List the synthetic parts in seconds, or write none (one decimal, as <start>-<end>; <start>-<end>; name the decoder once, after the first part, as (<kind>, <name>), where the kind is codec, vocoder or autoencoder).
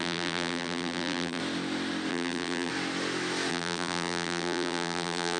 0.0-1.4 (vocoder, BigVGAN v2); 2.1-2.7; 3.5-5.4